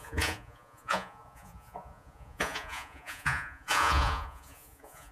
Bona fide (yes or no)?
no